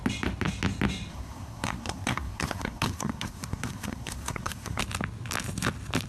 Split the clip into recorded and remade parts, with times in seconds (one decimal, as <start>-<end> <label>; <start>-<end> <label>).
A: 0.0-1.1 recorded; 1.1-4.8 remade; 4.8-6.1 recorded